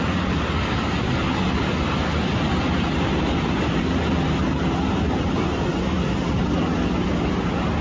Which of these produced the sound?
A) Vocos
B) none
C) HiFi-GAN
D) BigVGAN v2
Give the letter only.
B